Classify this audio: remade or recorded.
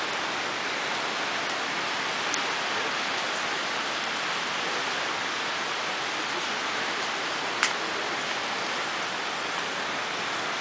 recorded